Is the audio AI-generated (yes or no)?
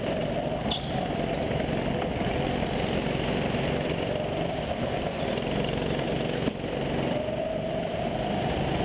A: no